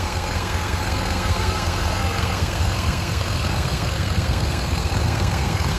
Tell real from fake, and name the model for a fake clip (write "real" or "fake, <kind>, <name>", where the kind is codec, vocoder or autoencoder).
fake, codec, SNAC